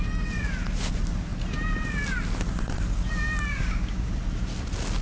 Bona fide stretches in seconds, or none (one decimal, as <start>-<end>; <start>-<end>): 0.0-3.5; 4.1-5.0